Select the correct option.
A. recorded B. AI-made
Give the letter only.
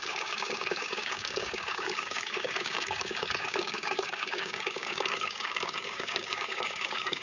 B